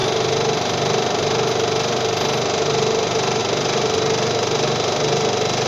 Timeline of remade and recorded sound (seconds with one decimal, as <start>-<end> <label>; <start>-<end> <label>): 0.0-5.7 recorded